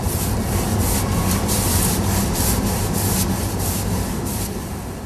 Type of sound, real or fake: real